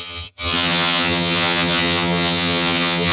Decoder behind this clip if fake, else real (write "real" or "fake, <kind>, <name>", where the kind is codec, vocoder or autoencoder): fake, vocoder, HiFi-GAN